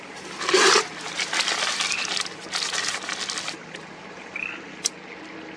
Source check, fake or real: real